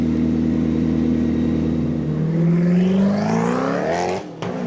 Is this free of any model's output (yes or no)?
yes